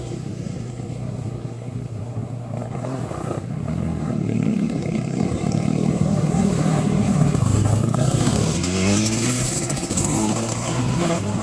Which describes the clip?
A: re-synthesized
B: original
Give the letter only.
A